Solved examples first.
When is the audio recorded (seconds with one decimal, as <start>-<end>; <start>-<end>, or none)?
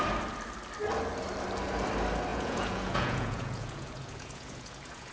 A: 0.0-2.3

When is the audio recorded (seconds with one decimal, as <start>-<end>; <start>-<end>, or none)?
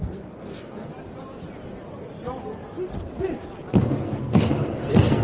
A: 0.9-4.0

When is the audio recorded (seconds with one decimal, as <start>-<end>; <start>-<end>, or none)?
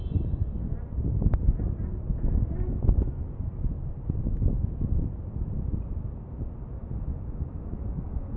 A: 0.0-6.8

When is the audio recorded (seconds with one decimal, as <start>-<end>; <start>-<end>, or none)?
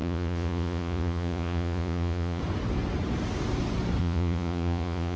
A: 2.4-4.0